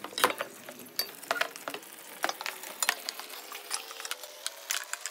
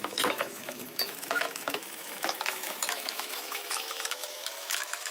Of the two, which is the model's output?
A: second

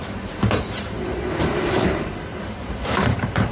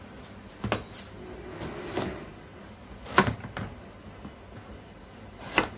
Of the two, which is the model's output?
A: first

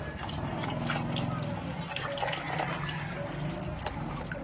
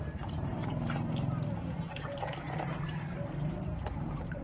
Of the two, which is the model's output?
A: second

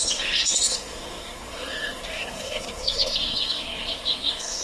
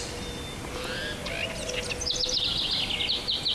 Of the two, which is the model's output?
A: first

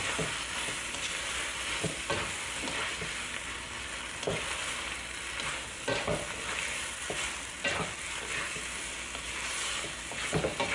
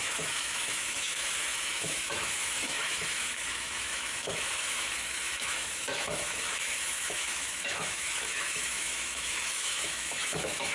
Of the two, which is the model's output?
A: second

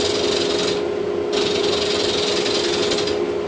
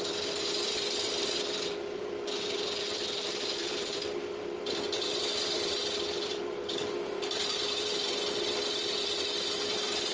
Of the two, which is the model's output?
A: second